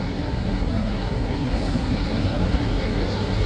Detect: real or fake fake